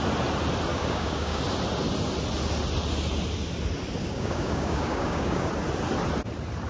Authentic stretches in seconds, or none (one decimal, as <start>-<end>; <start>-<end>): 0.0-0.7; 1.4-4.0; 5.5-6.7